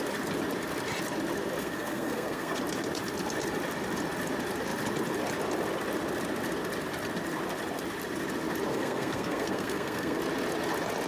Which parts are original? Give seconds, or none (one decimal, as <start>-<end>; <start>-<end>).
0.0-1.6; 2.6-8.7; 10.2-11.1

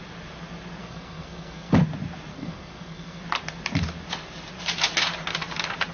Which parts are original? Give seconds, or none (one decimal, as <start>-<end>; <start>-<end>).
0.0-0.8; 1.7-2.3; 3.2-5.9

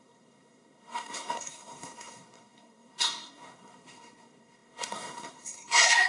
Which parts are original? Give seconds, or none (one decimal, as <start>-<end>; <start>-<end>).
none